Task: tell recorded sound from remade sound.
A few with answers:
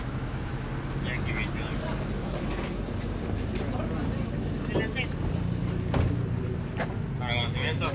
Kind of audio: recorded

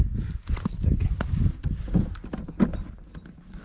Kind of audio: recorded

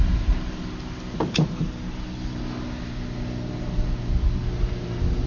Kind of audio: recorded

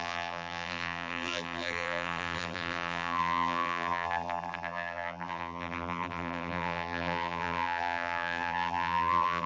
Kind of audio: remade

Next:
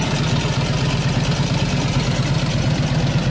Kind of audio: recorded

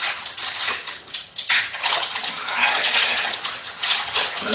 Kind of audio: remade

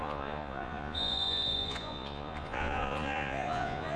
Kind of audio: remade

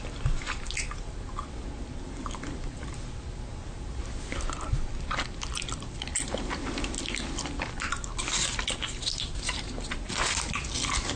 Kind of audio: recorded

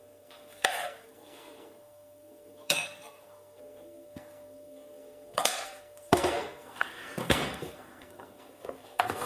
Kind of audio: remade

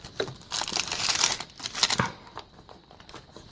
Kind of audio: recorded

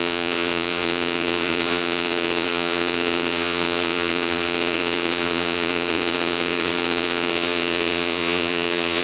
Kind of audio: remade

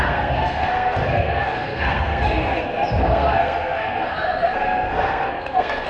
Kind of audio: remade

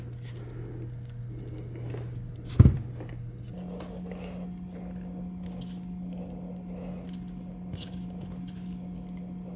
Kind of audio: recorded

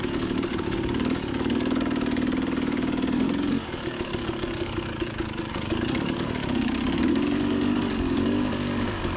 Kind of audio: remade